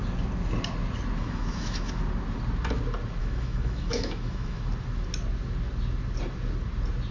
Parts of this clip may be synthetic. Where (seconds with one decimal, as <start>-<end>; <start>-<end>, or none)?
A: 1.2-2.0; 3.2-4.6